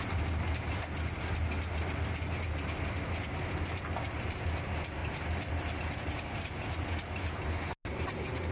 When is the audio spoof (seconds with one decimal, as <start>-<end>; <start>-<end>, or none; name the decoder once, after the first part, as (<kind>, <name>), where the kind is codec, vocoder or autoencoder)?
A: 5.0-5.8 (vocoder, BigVGAN v2)